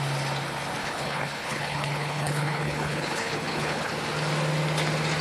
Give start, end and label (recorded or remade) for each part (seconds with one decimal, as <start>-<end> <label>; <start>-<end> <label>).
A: 0.0-0.8 recorded; 0.8-3.9 remade; 3.9-5.2 recorded